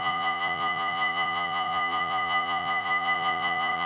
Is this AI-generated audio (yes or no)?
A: yes